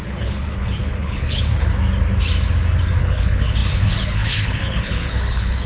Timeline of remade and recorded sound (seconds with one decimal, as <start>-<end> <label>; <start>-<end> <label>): 0.0-1.7 remade; 1.7-3.0 recorded; 3.0-5.7 remade